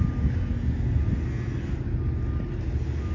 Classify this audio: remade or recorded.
recorded